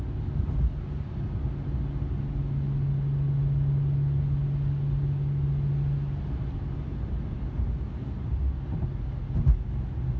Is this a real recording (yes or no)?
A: yes